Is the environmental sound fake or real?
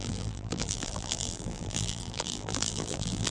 fake